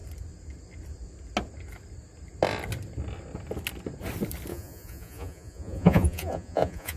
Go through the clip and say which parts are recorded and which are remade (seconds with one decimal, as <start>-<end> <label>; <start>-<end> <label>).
0.0-4.5 recorded; 4.5-7.0 remade